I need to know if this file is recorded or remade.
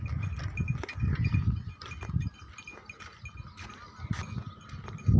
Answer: recorded